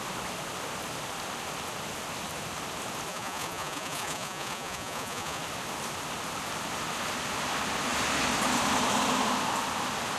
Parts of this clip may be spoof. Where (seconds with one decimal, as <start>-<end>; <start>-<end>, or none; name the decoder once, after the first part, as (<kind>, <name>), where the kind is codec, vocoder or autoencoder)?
3.1-5.4 (vocoder, Vocos)